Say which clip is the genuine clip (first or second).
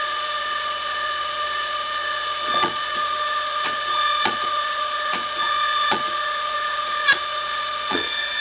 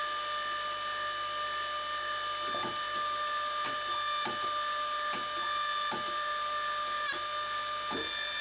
second